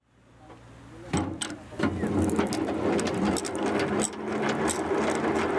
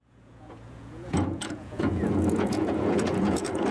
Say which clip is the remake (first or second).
second